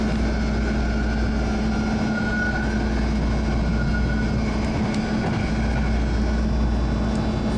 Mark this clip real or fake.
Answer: real